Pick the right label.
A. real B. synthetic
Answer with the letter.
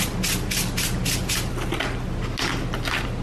A